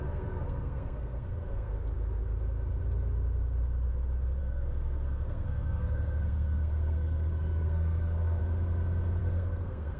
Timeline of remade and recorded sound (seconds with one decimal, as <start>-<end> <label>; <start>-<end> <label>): 0.0-1.7 remade; 1.7-4.4 recorded; 4.4-8.4 remade; 8.4-9.2 recorded; 9.2-10.0 remade